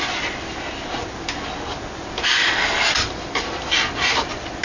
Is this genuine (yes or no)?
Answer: yes